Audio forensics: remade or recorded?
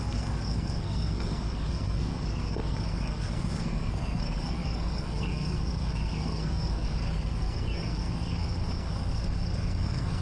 remade